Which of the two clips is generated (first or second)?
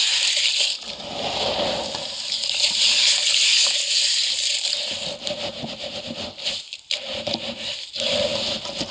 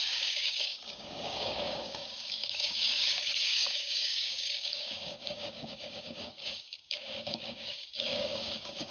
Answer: second